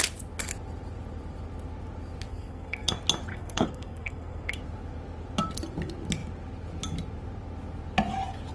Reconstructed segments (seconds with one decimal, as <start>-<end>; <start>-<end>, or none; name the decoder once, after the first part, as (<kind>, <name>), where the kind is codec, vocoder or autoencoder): 2.3-2.9 (codec, SNAC); 3.3-4.5